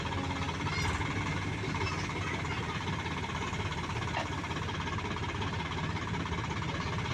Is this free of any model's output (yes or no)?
yes